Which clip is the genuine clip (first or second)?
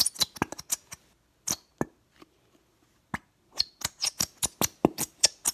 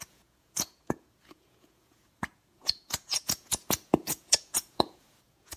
first